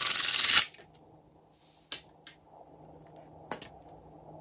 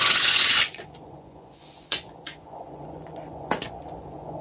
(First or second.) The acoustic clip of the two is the first